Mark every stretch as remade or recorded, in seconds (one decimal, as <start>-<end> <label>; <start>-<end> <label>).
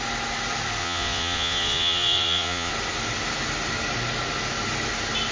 0.0-0.8 recorded; 0.8-2.7 remade; 2.7-5.3 recorded